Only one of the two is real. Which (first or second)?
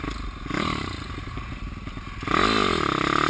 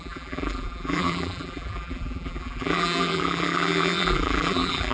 first